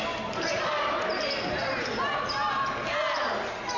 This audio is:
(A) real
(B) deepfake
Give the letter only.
A